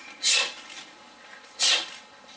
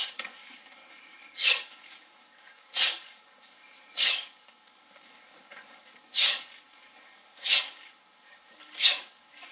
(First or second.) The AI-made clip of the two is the second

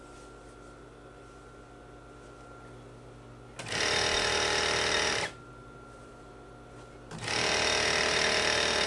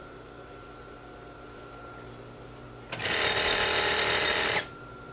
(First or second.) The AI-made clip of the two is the second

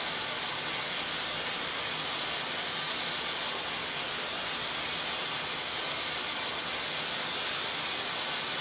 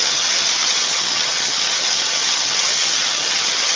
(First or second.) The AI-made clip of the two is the second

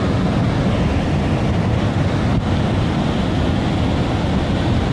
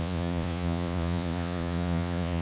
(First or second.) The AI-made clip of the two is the second